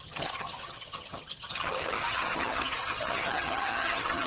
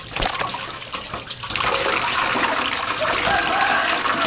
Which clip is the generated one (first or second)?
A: first